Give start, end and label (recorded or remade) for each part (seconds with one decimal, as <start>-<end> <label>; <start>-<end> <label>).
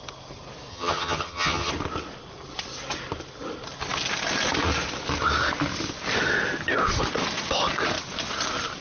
0.0-0.7 recorded; 0.7-1.7 remade; 1.7-8.8 recorded